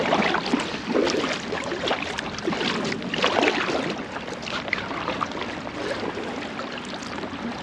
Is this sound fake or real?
real